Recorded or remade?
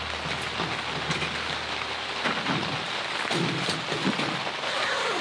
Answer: recorded